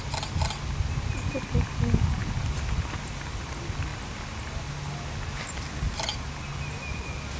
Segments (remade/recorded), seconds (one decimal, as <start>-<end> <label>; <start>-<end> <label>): 0.0-7.4 recorded